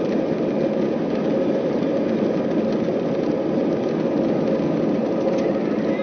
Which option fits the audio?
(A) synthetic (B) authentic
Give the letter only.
B